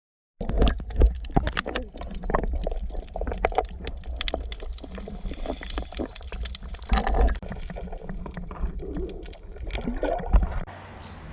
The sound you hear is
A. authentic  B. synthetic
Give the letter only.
A